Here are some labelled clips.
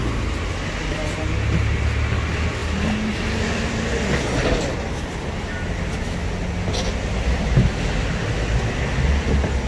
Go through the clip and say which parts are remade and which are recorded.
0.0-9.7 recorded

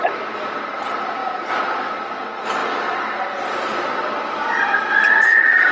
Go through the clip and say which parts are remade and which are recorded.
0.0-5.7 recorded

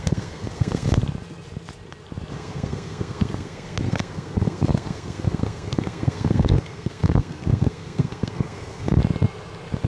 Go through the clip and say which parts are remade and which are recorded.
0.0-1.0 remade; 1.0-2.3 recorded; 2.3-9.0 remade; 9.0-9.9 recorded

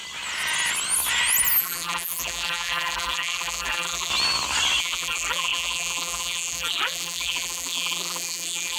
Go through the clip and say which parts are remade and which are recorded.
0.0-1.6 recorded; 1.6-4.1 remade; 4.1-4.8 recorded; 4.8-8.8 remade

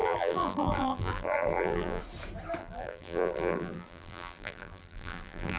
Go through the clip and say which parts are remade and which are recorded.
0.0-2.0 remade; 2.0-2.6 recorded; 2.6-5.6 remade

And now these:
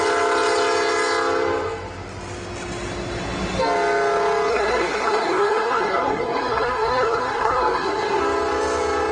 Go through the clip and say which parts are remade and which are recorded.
0.0-4.5 recorded; 4.5-8.2 remade; 8.2-9.1 recorded

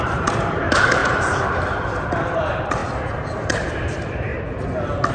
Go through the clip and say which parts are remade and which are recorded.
0.0-2.8 remade; 2.8-3.4 recorded; 3.4-4.3 remade; 4.3-5.1 recorded

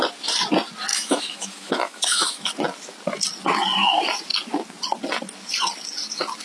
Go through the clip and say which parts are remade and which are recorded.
0.0-0.9 recorded; 0.9-2.5 remade; 2.5-6.4 recorded